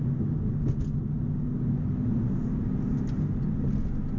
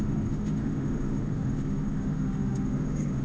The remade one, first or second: second